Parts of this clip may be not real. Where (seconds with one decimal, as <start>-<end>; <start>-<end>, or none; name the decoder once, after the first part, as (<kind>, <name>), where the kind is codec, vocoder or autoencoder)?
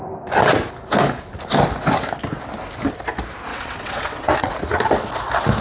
3.5-4.5 (vocoder, WaveNeXt)